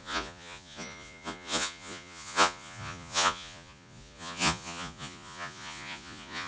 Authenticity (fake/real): fake